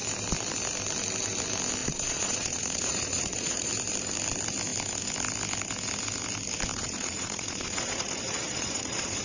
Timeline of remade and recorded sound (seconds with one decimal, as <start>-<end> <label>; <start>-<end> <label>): 0.0-1.8 recorded; 1.8-3.7 remade; 3.7-6.7 recorded; 6.7-9.2 remade